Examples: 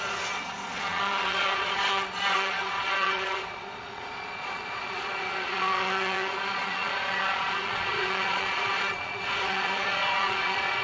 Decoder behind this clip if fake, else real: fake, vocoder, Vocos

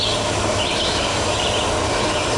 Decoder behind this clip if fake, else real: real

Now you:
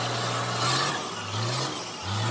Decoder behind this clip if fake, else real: real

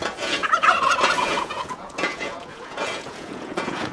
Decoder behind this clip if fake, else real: fake, vocoder, Vocos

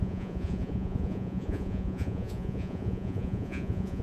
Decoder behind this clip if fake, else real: fake, vocoder, Vocos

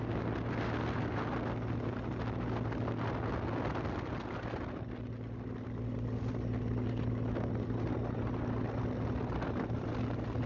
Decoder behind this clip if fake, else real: real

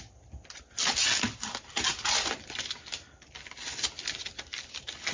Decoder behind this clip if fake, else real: real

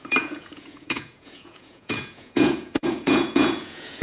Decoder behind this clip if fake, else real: fake, vocoder, Vocos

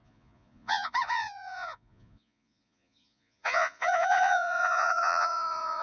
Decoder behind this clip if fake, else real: fake, vocoder, Vocos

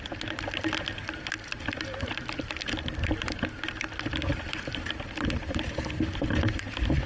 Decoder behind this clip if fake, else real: real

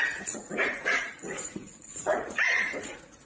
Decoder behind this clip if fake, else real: fake, vocoder, Vocos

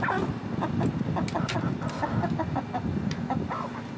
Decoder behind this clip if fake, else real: real